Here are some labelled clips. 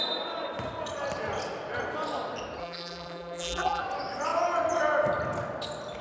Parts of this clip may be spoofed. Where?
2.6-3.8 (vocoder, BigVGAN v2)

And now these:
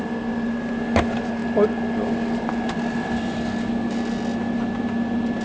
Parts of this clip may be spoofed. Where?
none